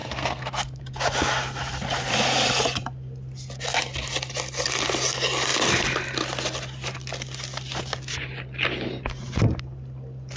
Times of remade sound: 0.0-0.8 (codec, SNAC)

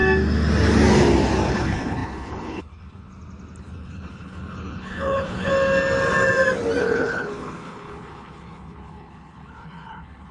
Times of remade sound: 1.5-3.1 (codec, HILCodec); 3.6-5.5; 6.8-10.3

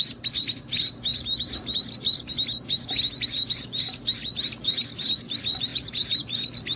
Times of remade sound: 1.1-5.0 (vocoder, BigVGAN v2); 5.7-6.2

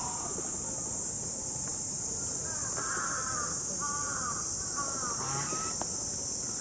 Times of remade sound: none

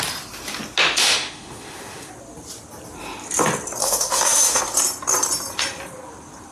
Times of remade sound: 1.0-2.1 (autoencoder, DAC-VAE); 3.8-4.6

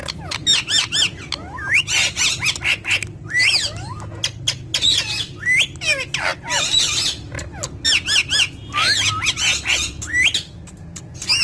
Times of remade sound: none

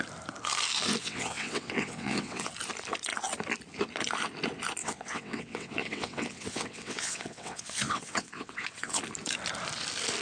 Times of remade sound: 1.0-2.5 (vocoder, WaveNeXt); 4.8-9.0